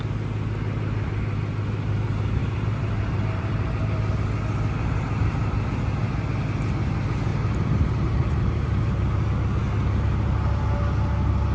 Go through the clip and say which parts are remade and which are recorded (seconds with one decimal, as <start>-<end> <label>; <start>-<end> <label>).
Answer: 0.0-2.4 recorded; 2.4-3.8 remade; 3.8-7.3 recorded; 7.3-9.2 remade; 9.2-11.5 recorded

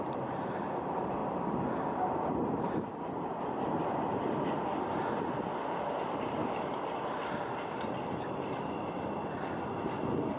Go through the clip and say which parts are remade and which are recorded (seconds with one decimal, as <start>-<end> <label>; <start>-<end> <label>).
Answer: 0.0-1.2 remade; 1.2-5.7 recorded; 5.7-6.4 remade; 6.4-10.4 recorded

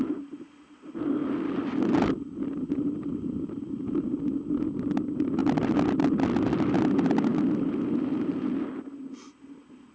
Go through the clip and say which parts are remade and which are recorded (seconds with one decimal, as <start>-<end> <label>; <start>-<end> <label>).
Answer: 0.0-1.2 recorded; 1.2-3.3 remade; 3.3-9.9 recorded

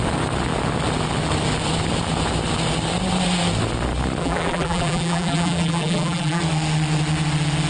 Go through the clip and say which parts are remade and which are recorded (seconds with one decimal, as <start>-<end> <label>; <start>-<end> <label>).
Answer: 0.0-4.2 recorded; 4.2-6.4 remade; 6.4-7.7 recorded

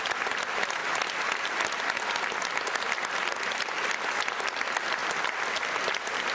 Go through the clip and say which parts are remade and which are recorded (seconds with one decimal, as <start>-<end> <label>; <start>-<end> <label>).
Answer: 0.0-6.3 recorded

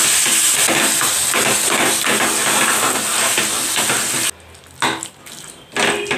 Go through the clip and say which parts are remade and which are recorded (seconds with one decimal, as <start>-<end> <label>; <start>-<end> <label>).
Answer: 0.0-1.2 recorded; 1.2-2.1 remade; 2.1-6.2 recorded